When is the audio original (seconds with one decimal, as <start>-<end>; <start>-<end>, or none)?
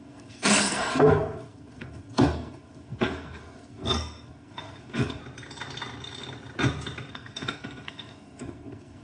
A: 5.2-7.1